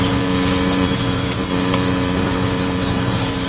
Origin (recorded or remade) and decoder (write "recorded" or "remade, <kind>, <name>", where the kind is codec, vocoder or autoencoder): remade, vocoder, BigVGAN v2